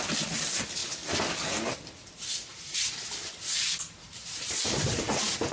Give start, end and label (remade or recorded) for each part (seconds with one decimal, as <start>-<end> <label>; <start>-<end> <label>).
0.0-2.5 recorded; 2.5-5.1 remade; 5.1-5.5 recorded